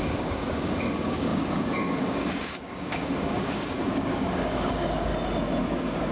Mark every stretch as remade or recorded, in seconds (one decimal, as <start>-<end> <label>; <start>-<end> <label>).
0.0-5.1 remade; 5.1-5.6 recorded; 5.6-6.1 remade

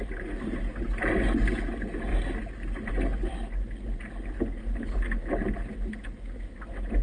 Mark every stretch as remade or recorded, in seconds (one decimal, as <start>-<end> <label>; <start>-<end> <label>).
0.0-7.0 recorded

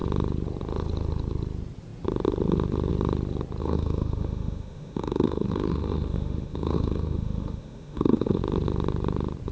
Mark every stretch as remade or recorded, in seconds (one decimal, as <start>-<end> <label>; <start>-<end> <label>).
0.0-3.6 recorded; 3.6-8.4 remade; 8.4-9.5 recorded

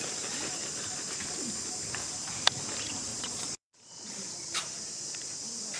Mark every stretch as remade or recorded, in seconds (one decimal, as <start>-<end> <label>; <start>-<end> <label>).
0.0-3.1 recorded; 3.1-4.1 remade; 4.1-5.8 recorded

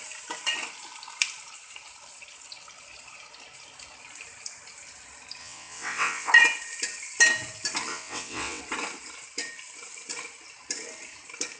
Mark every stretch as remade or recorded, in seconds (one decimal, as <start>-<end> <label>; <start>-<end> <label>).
0.0-5.4 recorded; 5.4-6.3 remade; 6.3-7.9 recorded; 7.9-8.6 remade; 8.6-11.6 recorded

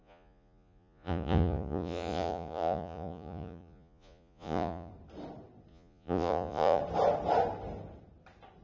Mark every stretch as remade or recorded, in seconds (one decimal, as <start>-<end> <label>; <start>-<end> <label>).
0.0-4.9 remade; 4.9-5.7 recorded; 5.7-6.8 remade; 6.8-8.6 recorded